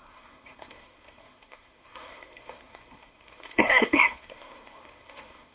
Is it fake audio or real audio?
fake